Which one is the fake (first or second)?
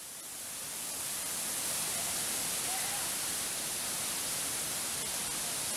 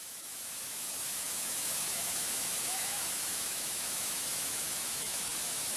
second